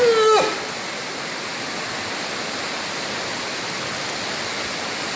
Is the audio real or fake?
real